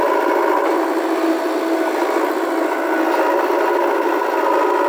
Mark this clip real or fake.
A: real